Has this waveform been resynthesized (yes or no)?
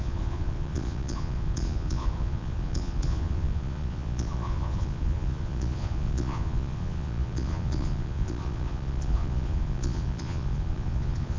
yes